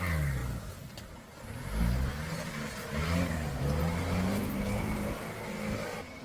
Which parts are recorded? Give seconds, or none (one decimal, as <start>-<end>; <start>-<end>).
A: 0.0-6.2